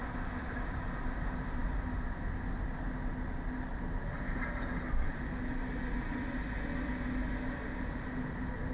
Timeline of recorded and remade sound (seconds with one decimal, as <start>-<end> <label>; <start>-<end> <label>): 0.0-8.7 recorded